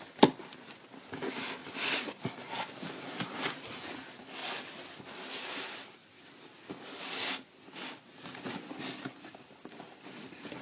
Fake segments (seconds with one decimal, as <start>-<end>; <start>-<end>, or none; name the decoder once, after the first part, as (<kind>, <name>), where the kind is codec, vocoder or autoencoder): 1.6-2.5 (vocoder, BigVGAN v2); 6.0-7.3